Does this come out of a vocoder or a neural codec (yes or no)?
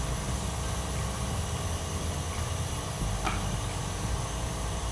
no